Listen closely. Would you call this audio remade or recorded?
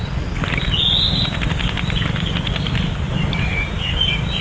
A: recorded